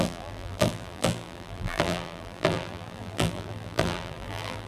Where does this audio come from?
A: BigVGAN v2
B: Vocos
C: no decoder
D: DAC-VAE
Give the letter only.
A